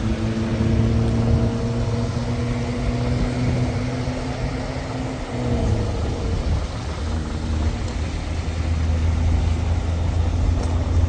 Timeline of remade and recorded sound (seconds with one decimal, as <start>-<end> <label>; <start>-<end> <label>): 0.0-11.1 recorded